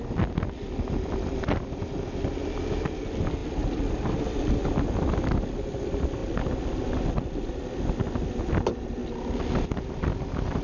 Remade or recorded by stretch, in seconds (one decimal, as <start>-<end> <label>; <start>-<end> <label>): 0.0-10.6 recorded

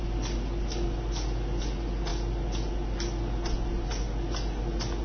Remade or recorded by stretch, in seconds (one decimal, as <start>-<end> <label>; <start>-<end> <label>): 0.0-5.0 recorded

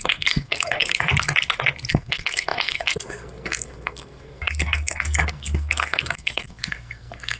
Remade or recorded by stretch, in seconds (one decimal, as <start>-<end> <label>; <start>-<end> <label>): 0.0-1.1 remade; 1.1-1.9 recorded; 1.9-7.4 remade